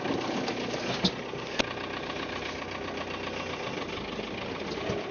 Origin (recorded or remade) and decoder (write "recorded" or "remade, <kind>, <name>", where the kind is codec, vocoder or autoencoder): recorded